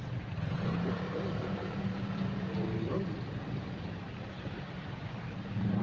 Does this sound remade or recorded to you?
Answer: remade